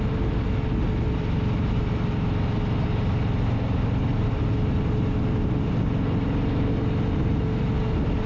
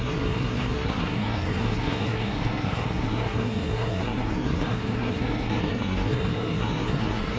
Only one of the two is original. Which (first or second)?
first